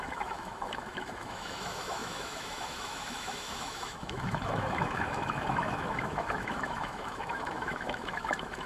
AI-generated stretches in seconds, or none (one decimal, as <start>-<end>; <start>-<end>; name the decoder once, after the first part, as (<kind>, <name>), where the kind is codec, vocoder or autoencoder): 0.0-8.7 (autoencoder, DAC-VAE)